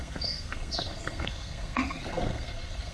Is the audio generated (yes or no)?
yes